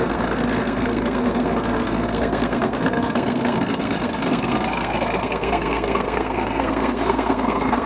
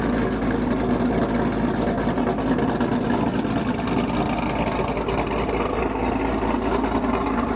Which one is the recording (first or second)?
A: second